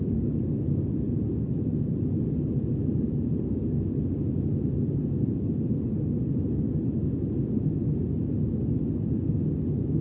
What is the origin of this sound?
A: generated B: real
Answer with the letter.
B